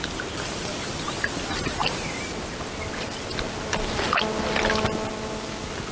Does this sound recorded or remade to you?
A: recorded